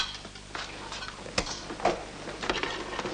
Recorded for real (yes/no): yes